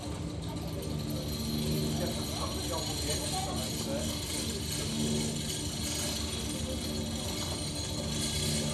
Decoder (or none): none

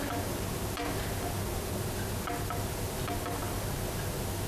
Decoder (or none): none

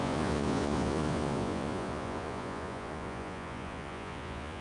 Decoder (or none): vocoder, Vocos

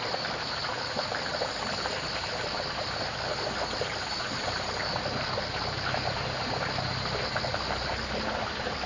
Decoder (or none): none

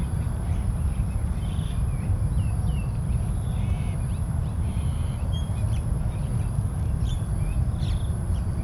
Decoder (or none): vocoder, BigVGAN v2